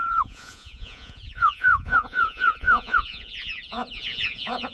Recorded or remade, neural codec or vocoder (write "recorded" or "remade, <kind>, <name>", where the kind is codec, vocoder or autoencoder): remade, vocoder, Vocos